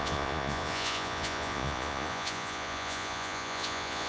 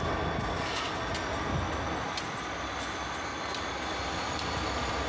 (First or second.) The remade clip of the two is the first